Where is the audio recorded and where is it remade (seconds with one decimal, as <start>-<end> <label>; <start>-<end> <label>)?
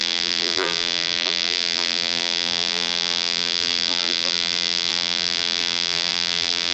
0.0-6.7 remade